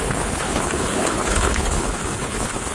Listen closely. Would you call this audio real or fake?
fake